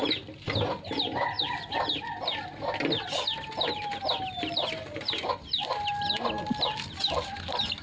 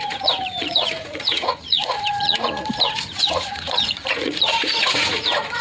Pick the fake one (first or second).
second